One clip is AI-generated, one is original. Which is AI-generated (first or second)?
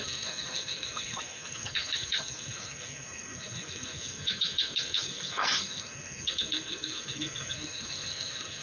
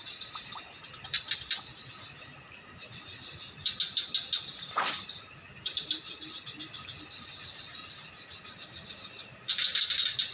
first